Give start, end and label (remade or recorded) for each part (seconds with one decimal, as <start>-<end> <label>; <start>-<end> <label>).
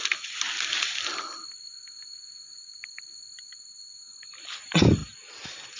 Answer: 0.0-5.8 recorded